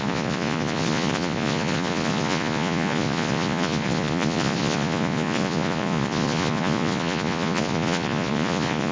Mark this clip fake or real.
fake